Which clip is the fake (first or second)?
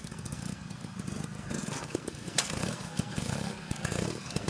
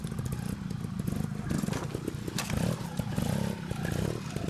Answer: first